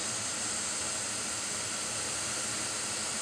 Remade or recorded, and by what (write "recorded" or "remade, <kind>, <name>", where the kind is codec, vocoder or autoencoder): recorded